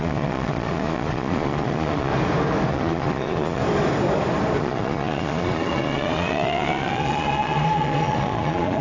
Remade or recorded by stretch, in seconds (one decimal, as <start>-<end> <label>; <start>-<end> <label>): 0.0-2.1 remade; 2.1-2.7 recorded; 2.7-3.6 remade; 3.6-4.6 recorded; 4.6-8.8 remade